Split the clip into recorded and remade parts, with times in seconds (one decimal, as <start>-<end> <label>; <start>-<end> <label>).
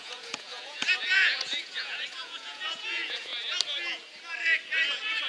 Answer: 0.0-3.3 remade; 3.3-5.3 recorded